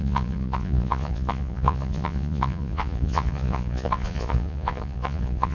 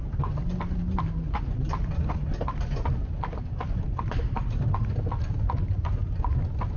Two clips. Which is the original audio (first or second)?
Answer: second